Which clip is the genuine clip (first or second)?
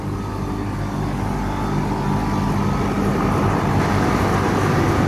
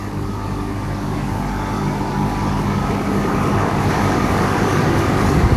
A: first